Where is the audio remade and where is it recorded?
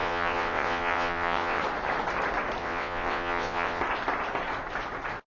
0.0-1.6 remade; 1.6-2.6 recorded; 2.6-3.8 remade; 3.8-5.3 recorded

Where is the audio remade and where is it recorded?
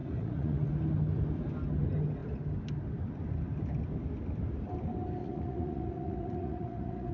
0.0-0.7 remade; 0.7-5.2 recorded; 5.2-7.1 remade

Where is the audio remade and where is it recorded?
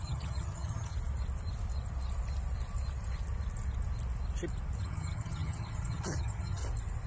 0.0-0.9 remade; 0.9-4.8 recorded; 4.8-6.6 remade; 6.6-7.1 recorded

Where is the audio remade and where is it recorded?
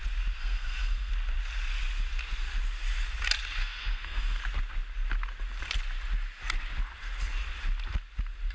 0.0-0.4 recorded; 0.4-1.1 remade; 1.1-3.6 recorded; 3.6-4.4 remade; 4.4-8.5 recorded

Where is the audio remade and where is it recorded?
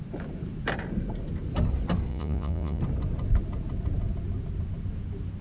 0.0-2.1 recorded; 2.1-2.8 remade; 2.8-5.4 recorded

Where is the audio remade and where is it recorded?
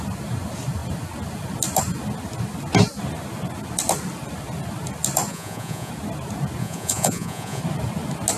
0.0-5.3 recorded; 5.3-5.9 remade; 5.9-6.6 recorded; 6.6-7.6 remade; 7.6-8.4 recorded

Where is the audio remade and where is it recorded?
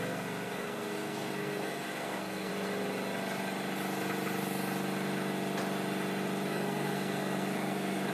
0.0-2.5 remade; 2.5-6.5 recorded; 6.5-8.1 remade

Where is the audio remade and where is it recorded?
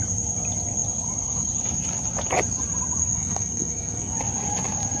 0.0-3.0 recorded; 3.0-4.1 remade; 4.1-5.0 recorded